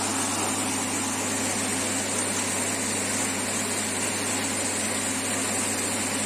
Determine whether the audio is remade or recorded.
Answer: recorded